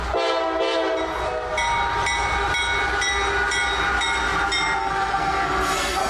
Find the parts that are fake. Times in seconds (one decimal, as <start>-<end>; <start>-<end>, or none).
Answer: 4.8-6.1